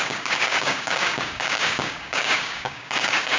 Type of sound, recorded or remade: remade